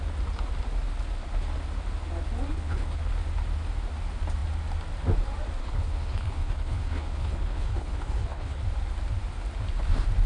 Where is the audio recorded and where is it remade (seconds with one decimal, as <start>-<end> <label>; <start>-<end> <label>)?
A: 0.0-2.5 recorded; 2.5-3.1 remade; 3.1-5.6 recorded; 5.6-8.6 remade; 8.6-10.3 recorded